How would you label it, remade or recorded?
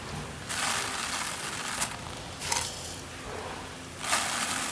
recorded